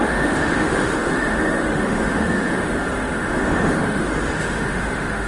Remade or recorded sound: remade